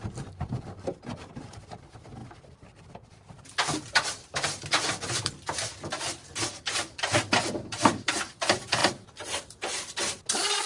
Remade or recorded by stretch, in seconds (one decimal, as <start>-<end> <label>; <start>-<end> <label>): 0.0-1.5 remade; 1.5-2.2 recorded; 2.2-5.0 remade; 5.0-10.7 recorded